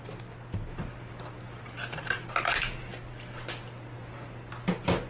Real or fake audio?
real